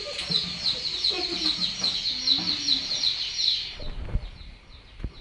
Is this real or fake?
real